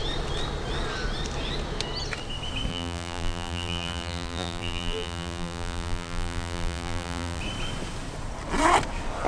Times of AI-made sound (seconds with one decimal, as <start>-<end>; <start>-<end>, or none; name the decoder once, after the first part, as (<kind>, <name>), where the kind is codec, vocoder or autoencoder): 2.7-7.4 (vocoder, BigVGAN v2)